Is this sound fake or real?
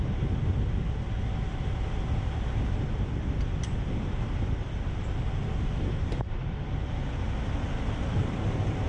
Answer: real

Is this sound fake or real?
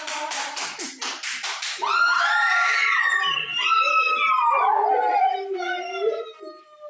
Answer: real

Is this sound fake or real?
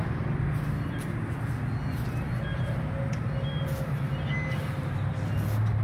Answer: real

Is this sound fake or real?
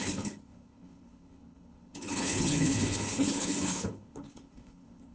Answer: fake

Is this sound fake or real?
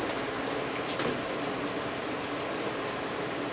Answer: real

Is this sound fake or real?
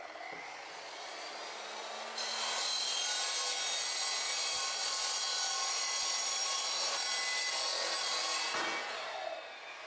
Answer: real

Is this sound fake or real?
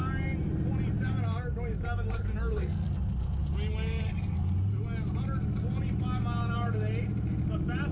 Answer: real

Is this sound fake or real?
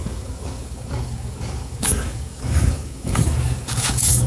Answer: fake